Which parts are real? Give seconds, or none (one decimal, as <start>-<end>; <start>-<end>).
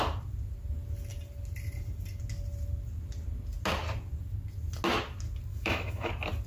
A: 0.0-5.5; 6.1-6.5